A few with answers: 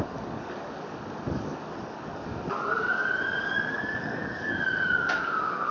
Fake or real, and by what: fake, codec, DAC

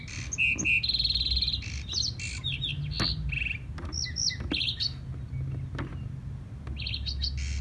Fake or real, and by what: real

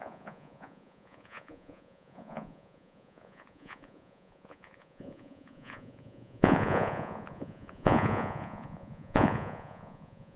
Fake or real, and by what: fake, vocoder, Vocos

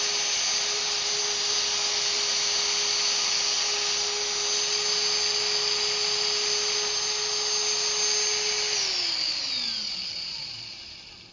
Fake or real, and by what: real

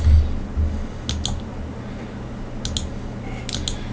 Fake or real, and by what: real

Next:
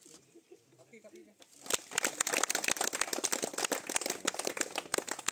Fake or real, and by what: real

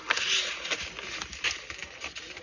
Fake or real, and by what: real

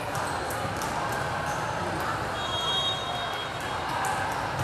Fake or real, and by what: real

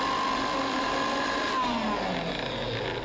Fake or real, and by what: real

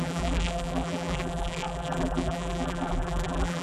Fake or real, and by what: fake, vocoder, BigVGAN v2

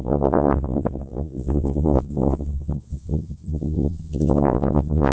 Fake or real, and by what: fake, vocoder, Vocos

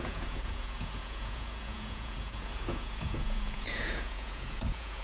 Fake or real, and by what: fake, vocoder, Vocos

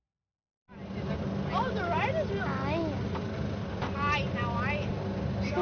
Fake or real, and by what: real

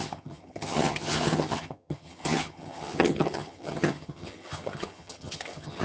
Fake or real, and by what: fake, vocoder, HiFi-GAN